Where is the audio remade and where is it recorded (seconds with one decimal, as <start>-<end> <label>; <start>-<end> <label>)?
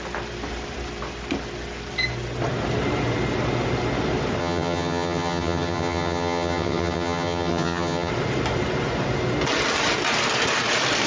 0.0-4.4 recorded; 4.4-8.1 remade; 8.1-11.1 recorded